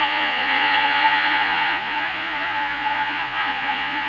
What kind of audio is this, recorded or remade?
remade